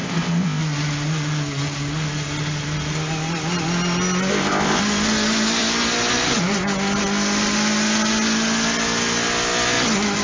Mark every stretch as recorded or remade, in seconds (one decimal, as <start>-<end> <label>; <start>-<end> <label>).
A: 0.0-0.6 remade; 0.6-4.3 recorded; 4.3-4.8 remade; 4.8-10.2 recorded